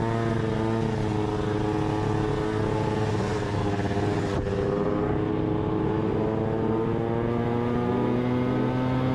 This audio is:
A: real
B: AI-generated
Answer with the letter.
A